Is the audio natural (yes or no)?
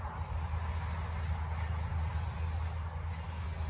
yes